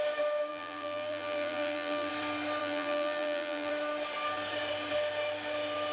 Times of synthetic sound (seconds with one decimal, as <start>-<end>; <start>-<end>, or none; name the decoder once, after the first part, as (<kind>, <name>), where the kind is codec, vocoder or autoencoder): 0.5-2.1 (vocoder, BigVGAN v2); 2.6-3.7